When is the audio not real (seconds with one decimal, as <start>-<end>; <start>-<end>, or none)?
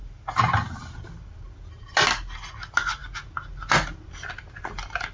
none